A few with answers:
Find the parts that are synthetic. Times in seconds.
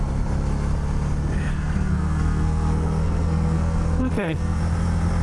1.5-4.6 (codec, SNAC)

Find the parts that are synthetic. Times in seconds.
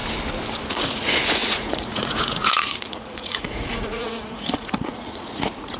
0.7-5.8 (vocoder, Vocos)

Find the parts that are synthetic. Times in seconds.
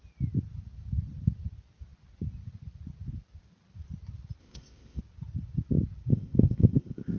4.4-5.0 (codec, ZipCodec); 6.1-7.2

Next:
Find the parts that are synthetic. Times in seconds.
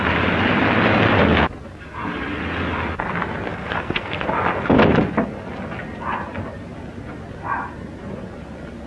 3.5-4.2 (codec, SNAC)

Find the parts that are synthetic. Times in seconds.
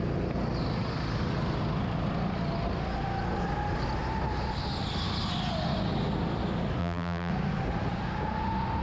6.8-7.3 (vocoder, BigVGAN v2)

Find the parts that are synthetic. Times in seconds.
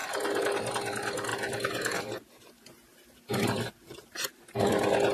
1.3-4.3 (vocoder, BigVGAN v2)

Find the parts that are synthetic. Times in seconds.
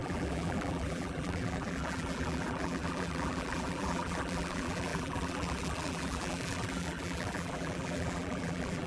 0.0-8.9 (vocoder, BigVGAN v2)